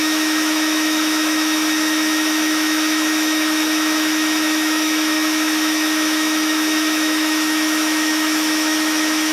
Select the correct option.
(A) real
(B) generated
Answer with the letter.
B